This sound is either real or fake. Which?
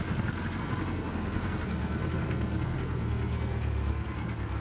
fake